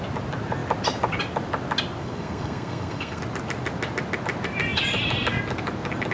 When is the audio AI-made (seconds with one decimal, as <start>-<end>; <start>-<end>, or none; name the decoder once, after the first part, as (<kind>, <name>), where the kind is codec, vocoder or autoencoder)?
2.0-3.2 (codec, SNAC)